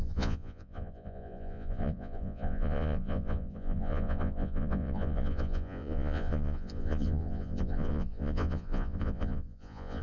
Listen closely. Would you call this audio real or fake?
fake